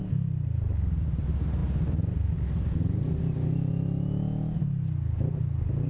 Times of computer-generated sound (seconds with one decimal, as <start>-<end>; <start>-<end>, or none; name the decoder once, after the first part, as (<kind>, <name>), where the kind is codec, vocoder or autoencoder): none